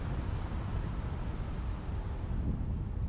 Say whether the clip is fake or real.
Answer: real